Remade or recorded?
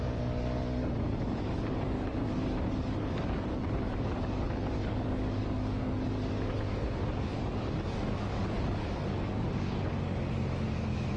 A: remade